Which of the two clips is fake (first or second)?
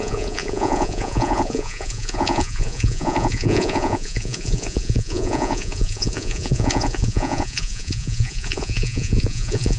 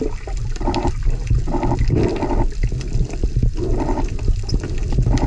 first